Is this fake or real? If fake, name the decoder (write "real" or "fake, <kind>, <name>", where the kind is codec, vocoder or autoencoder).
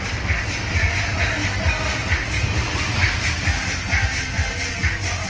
real